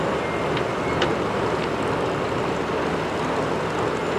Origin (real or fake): real